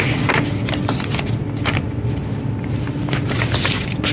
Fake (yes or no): no